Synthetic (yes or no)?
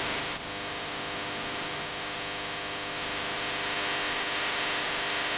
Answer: no